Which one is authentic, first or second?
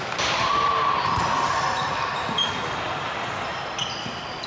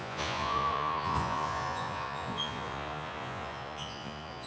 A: first